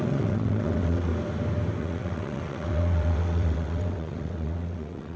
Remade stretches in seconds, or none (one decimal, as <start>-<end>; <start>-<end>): 0.0-1.1; 1.8-5.2